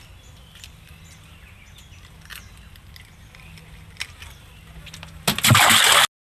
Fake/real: real